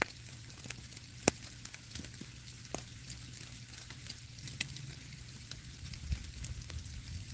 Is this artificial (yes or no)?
yes